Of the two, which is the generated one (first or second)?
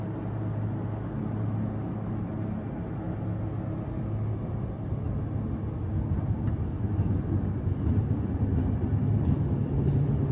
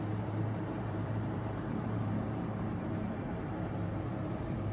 second